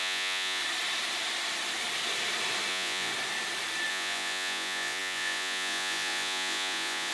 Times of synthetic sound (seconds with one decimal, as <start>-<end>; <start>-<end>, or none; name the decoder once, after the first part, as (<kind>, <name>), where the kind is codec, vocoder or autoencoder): 0.0-0.6 (vocoder, Vocos); 2.7-3.1; 3.9-7.1